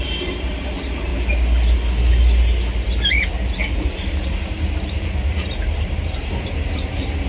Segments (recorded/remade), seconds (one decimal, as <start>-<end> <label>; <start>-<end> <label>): 0.0-1.1 remade; 1.1-3.7 recorded; 3.7-7.3 remade